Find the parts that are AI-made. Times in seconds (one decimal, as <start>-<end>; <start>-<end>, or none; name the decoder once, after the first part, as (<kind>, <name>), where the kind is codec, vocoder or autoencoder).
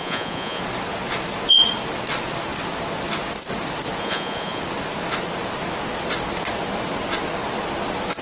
0.0-0.6 (vocoder, Vocos); 4.0-4.6